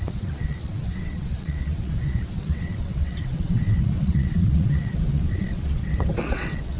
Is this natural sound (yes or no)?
no